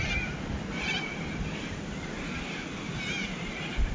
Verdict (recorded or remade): recorded